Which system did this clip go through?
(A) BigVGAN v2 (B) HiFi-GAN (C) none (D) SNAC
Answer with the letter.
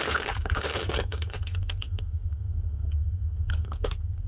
D